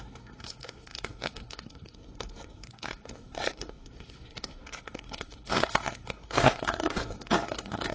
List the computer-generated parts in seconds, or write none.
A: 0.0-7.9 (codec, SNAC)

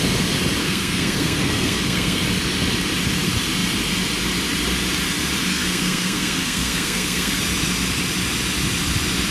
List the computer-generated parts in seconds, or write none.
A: 0.6-2.2 (codec, SNAC); 5.5-7.4

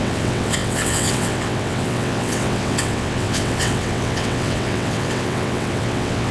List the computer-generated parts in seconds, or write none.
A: 0.0-6.3 (vocoder, WaveNeXt)

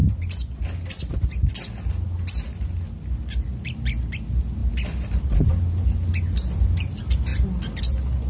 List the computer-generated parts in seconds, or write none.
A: none

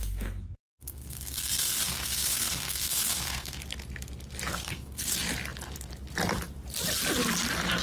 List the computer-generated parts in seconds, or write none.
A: 0.0-3.6 (codec, SNAC); 4.5-5.1

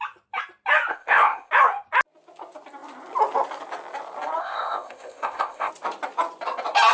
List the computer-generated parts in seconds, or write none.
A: 0.9-1.5 (codec, ZipCodec); 4.4-5.7